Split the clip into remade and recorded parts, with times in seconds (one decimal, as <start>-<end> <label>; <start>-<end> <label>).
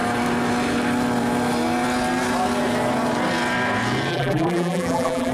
0.0-4.1 recorded; 4.1-5.3 remade